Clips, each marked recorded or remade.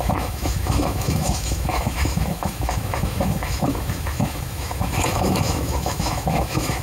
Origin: remade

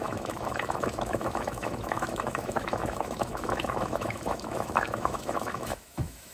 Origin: remade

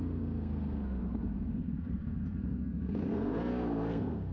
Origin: remade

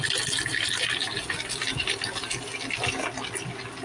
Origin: recorded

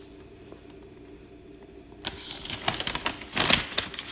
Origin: recorded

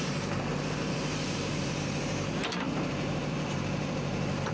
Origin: remade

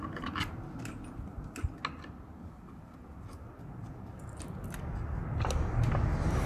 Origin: recorded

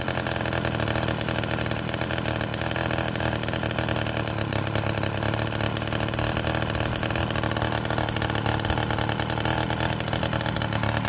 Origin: recorded